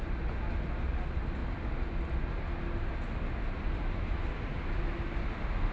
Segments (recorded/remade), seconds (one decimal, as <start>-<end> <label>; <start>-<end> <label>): 0.0-5.7 recorded